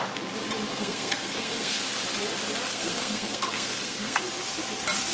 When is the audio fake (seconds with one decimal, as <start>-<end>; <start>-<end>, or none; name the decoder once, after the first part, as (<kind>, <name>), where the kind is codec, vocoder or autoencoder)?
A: 0.7-1.8 (codec, SNAC); 2.7-4.2